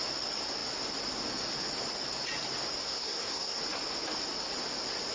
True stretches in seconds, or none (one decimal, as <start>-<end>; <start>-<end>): 0.0-2.8; 3.6-5.1